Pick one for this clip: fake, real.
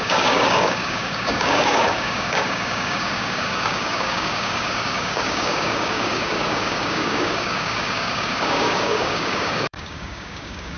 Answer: fake